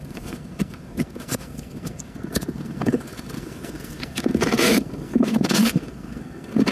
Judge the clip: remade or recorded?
remade